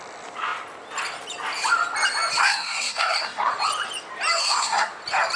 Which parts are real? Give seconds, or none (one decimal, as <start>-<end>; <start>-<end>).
0.0-2.4; 3.5-4.4; 4.9-5.4